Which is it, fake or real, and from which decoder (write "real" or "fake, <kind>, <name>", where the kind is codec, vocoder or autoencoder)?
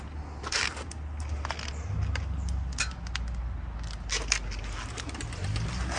real